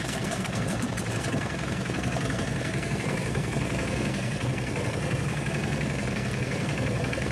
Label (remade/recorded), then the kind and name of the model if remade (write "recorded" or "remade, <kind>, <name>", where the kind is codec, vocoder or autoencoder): remade, codec, SNAC